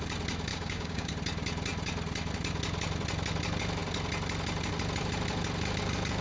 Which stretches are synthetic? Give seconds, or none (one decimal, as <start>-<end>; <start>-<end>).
0.5-1.1